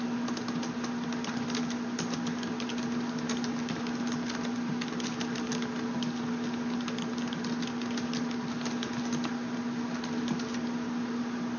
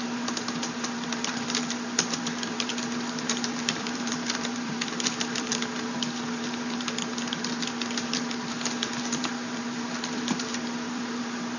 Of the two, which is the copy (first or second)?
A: second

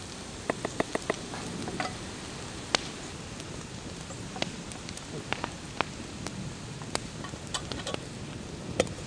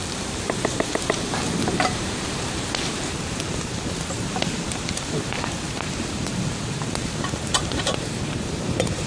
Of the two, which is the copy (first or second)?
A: second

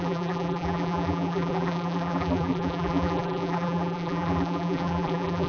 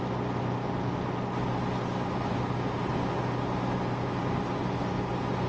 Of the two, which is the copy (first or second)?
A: first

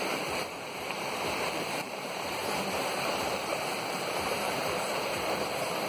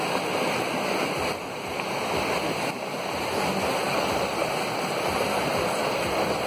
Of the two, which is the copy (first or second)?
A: first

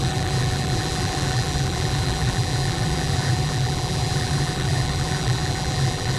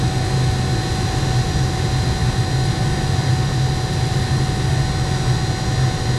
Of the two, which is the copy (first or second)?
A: first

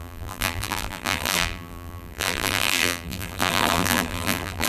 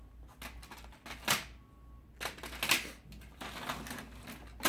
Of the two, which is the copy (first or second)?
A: first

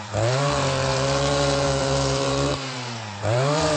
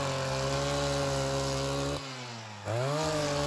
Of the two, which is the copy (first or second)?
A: first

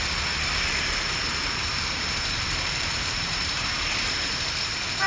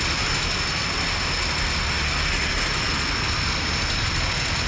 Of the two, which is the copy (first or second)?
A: first